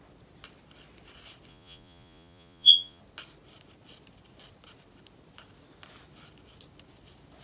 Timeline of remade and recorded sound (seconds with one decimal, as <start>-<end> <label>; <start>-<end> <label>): 0.0-1.5 recorded; 1.5-3.0 remade; 3.0-7.4 recorded